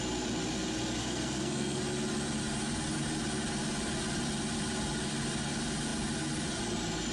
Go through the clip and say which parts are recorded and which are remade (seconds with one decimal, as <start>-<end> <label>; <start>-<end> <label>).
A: 0.0-1.0 recorded; 1.0-1.8 remade; 1.8-7.1 recorded